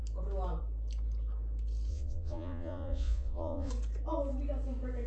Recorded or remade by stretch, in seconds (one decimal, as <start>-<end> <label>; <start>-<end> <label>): 0.0-1.9 recorded; 1.9-3.7 remade; 3.7-5.1 recorded